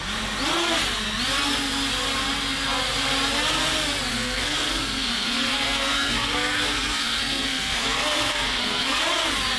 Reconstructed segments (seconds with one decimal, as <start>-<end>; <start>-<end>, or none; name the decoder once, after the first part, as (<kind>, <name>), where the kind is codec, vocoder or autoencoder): 4.1-9.0 (codec, SNAC)